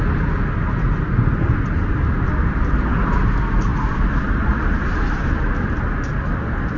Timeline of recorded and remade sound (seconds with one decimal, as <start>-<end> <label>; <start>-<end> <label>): 0.0-6.8 recorded